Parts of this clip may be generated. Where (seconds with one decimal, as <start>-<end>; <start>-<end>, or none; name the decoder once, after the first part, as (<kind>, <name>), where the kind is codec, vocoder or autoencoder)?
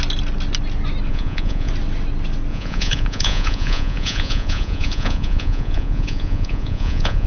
1.1-1.7 (vocoder, Vocos); 2.5-7.3